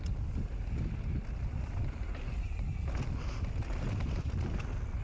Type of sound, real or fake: real